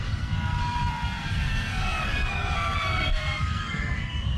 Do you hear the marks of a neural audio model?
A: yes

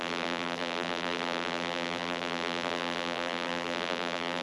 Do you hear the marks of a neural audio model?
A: yes